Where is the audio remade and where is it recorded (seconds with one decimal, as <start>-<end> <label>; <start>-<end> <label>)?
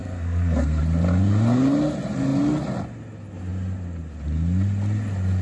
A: 0.0-0.8 remade; 0.8-5.4 recorded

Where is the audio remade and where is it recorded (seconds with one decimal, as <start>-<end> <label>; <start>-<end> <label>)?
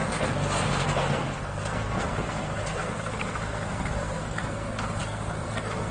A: 0.0-5.9 remade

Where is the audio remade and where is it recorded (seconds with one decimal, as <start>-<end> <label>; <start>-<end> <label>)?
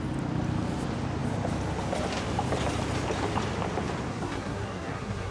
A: 0.0-4.1 recorded; 4.1-5.3 remade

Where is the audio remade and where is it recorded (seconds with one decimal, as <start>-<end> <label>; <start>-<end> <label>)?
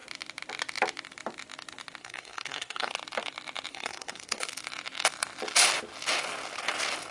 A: 0.0-2.0 recorded; 2.0-2.9 remade; 2.9-3.7 recorded; 3.7-4.5 remade; 4.5-7.1 recorded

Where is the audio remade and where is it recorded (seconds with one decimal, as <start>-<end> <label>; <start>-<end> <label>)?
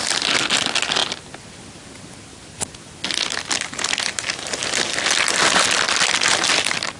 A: 0.0-7.0 recorded